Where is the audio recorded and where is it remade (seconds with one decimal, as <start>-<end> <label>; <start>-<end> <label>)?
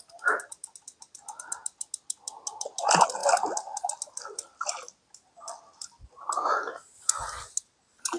0.0-8.2 recorded